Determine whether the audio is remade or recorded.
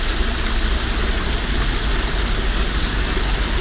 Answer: recorded